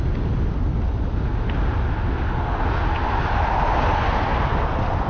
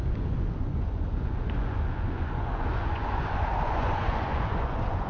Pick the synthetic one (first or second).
second